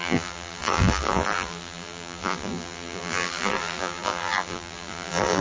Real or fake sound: fake